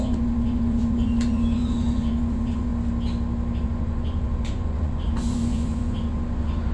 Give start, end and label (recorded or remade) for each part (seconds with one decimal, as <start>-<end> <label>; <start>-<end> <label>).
0.0-2.7 remade; 2.7-3.6 recorded; 3.6-6.7 remade